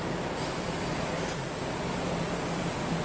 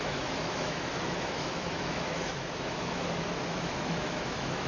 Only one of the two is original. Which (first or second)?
first